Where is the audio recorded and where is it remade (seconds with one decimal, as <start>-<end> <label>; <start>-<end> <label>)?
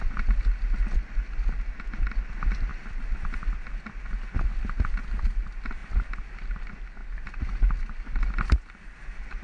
0.0-9.4 recorded